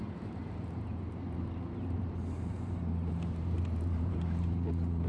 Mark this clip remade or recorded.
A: remade